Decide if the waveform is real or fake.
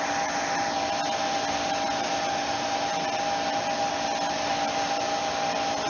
real